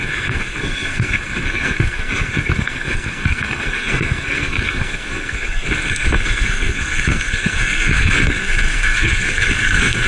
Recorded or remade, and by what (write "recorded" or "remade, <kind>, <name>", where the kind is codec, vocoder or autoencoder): remade, codec, SNAC